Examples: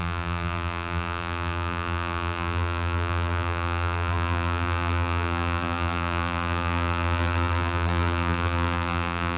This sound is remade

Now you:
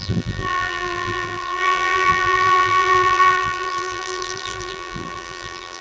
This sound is remade